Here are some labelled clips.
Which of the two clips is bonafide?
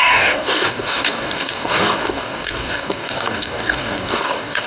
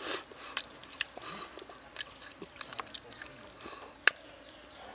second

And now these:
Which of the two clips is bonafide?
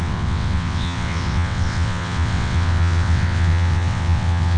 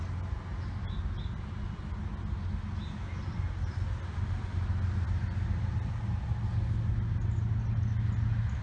second